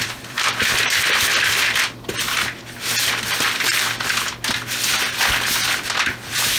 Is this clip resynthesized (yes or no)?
yes